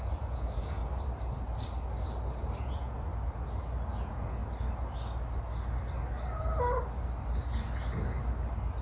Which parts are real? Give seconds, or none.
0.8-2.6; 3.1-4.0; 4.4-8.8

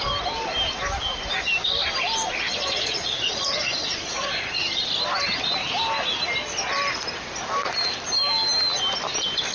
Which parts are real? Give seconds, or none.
0.0-2.5; 4.8-9.5

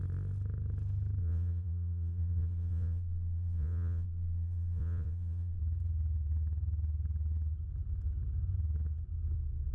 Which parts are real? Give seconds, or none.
0.0-1.2; 5.6-9.7

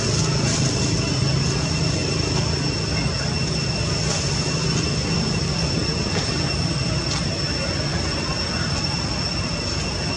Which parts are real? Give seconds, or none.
0.0-10.2